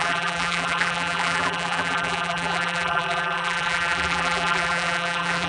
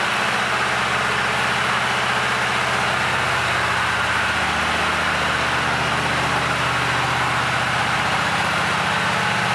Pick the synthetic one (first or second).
first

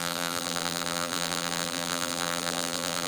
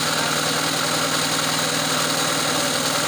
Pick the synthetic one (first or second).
first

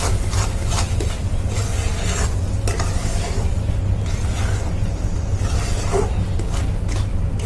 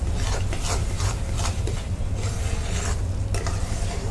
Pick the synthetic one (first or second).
second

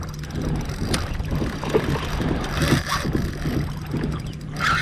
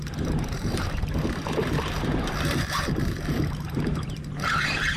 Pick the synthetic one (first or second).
second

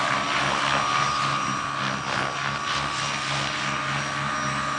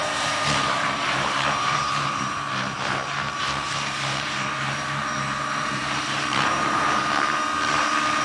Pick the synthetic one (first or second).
second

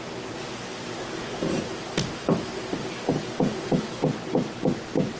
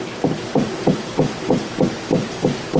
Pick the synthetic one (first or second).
second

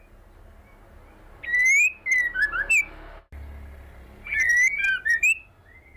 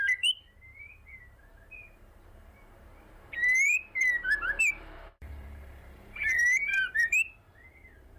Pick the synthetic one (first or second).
second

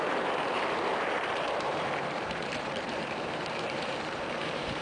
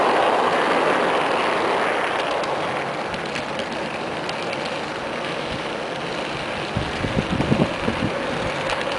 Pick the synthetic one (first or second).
first